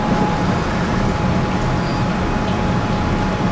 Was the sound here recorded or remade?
recorded